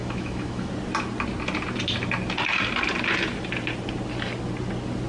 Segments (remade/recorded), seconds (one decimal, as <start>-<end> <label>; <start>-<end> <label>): 0.0-0.7 remade; 0.7-5.1 recorded